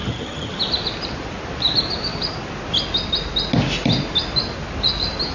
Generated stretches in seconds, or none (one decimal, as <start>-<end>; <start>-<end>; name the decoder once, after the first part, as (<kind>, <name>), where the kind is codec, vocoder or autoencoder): 0.0-0.6 (vocoder, HiFi-GAN)